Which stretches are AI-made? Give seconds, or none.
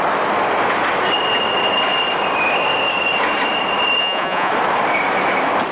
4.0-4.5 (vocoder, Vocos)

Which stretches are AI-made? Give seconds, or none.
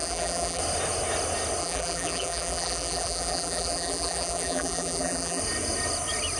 0.0-0.6 (vocoder, BigVGAN v2); 1.6-5.4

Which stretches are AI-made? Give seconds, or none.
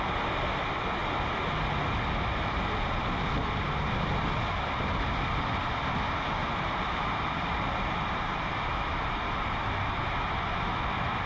6.4-8.5 (vocoder, BigVGAN v2)